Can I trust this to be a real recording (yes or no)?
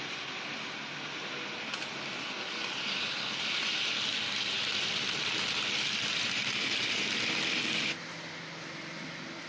yes